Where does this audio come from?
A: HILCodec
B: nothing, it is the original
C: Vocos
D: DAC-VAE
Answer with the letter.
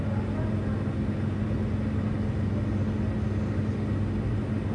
B